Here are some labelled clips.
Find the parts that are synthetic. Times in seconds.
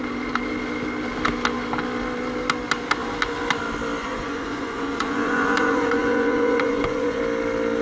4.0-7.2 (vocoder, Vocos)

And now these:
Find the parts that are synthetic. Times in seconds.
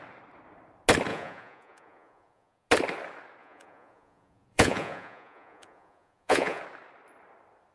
1.1-2.7 (vocoder, Vocos); 3.4-6.6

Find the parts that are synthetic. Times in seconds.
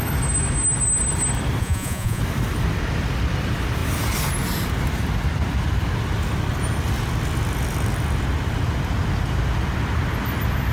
1.6-2.2 (vocoder, Vocos)